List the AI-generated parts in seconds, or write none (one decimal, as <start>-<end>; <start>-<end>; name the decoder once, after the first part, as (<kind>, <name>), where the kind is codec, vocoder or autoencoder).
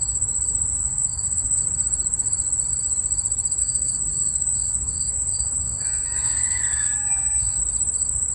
0.8-1.6 (codec, SNAC); 3.6-7.6